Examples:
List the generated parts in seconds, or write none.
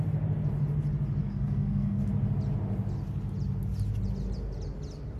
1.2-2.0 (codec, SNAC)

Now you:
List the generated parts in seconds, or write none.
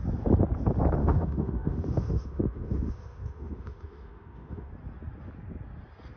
1.0-4.7 (autoencoder, DAC-VAE)